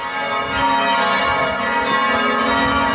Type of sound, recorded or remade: recorded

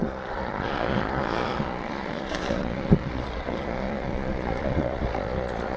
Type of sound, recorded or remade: remade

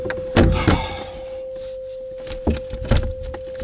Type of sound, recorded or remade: recorded